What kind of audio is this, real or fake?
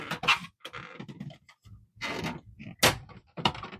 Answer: real